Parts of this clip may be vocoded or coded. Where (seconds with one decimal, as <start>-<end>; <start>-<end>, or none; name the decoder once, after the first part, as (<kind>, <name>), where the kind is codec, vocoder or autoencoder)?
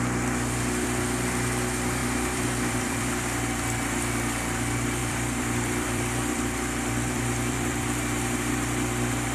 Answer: 2.0-3.1 (vocoder, BigVGAN v2); 5.0-8.9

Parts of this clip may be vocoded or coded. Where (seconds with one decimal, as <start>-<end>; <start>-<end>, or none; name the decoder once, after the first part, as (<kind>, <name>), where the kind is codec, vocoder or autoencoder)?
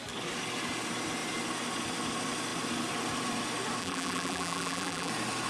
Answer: 3.8-5.1 (vocoder, BigVGAN v2)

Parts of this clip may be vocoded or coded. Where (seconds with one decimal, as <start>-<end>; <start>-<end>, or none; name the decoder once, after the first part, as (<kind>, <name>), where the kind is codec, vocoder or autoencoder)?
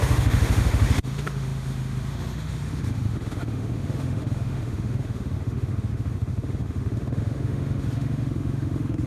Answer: 0.0-9.1 (autoencoder, DAC-VAE)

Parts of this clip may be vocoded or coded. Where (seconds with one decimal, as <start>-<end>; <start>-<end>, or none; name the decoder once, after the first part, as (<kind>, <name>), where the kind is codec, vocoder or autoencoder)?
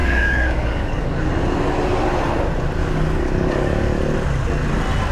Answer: 0.0-1.3 (codec, DAC); 2.8-4.0